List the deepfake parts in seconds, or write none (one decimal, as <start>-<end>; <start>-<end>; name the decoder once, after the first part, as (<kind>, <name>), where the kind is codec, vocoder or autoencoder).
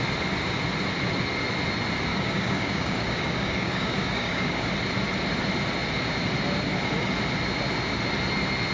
2.1-4.7 (codec, DAC)